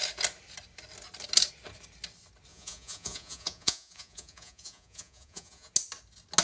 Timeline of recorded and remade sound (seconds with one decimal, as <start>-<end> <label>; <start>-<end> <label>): 0.0-2.5 recorded; 2.5-5.7 remade; 5.7-6.4 recorded